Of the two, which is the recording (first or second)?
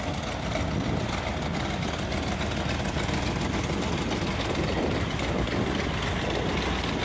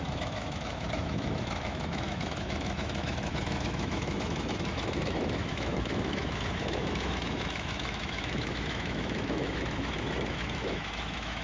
first